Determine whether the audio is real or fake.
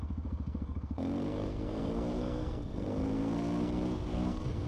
fake